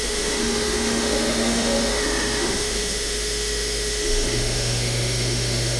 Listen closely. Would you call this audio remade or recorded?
remade